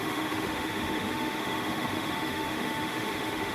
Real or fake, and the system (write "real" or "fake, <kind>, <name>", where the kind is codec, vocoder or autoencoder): fake, autoencoder, DAC-VAE